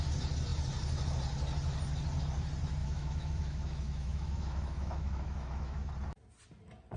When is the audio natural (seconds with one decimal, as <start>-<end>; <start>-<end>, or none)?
0.0-2.8; 5.9-7.0